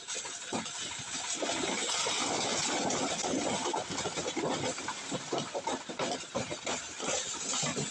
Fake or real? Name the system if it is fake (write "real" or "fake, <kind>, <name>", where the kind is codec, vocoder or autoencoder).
real